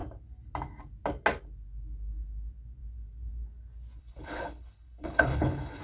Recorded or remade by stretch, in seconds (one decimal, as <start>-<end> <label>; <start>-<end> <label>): 0.0-4.0 recorded; 4.0-5.8 remade

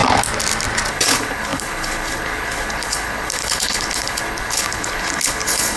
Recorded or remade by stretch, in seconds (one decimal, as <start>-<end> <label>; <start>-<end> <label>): 0.0-0.9 recorded; 0.9-5.8 remade